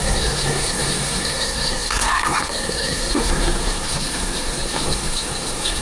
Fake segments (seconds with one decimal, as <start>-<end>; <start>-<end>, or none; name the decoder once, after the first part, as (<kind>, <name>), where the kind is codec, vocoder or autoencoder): 0.0-5.8 (codec, SNAC)